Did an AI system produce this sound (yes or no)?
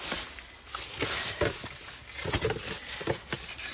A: no